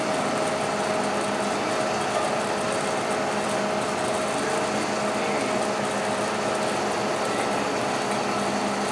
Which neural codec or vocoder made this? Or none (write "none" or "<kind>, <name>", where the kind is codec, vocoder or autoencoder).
none